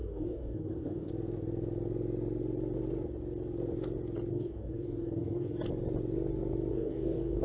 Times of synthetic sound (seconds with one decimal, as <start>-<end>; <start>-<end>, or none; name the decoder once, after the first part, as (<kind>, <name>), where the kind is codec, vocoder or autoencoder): 0.0-1.1 (codec, DAC); 4.3-5.6; 6.7-7.4